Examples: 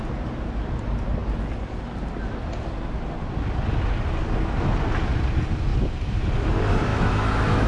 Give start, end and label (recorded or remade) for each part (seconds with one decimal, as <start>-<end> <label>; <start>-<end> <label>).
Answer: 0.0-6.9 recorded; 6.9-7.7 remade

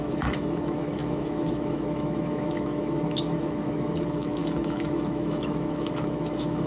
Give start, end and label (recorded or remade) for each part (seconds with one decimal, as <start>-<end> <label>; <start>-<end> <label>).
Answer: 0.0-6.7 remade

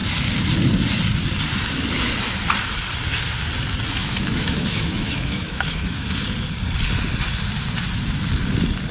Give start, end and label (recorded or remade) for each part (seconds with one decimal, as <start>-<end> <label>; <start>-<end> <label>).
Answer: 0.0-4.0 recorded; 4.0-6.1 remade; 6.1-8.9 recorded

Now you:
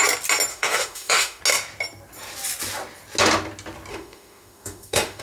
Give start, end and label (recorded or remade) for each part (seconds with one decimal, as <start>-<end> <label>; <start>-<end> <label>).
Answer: 0.0-0.5 recorded; 0.5-1.4 remade; 1.4-3.9 recorded; 3.9-5.2 remade

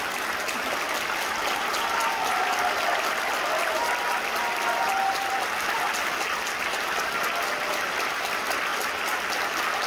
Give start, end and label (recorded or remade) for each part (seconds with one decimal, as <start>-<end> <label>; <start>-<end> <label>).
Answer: 0.0-9.9 recorded

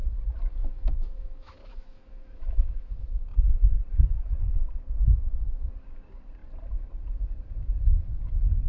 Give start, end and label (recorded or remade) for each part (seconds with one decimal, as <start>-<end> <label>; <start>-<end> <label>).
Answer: 0.0-0.6 recorded; 0.6-2.9 remade; 2.9-8.7 recorded